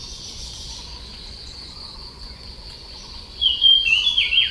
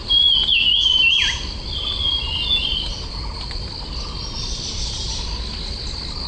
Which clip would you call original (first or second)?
second